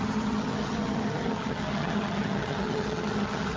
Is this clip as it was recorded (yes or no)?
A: no